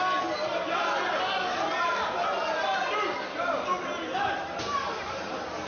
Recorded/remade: recorded